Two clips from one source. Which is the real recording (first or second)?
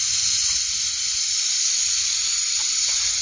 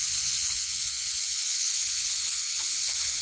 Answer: first